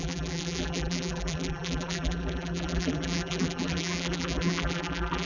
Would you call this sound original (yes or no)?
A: no